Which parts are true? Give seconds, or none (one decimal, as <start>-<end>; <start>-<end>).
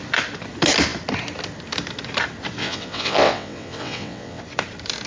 0.0-2.6; 4.4-5.1